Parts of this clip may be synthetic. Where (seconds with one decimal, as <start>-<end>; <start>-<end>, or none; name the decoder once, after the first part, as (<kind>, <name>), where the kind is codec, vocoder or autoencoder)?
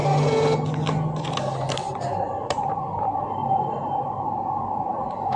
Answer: 1.9-5.4 (vocoder, BigVGAN v2)